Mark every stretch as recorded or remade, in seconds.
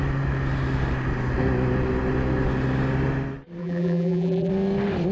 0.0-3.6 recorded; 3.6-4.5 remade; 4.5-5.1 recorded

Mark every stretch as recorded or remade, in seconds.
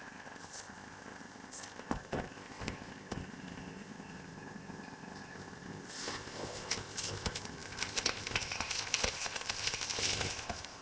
0.0-10.8 remade